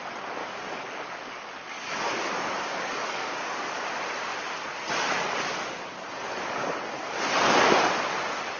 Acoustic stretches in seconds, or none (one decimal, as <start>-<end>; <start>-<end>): 0.0-0.4; 3.8-6.2; 6.7-8.6